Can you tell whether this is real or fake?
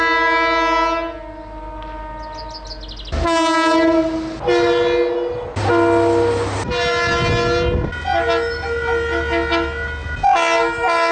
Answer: real